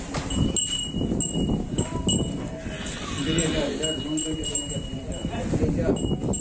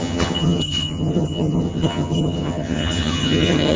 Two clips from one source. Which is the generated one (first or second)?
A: second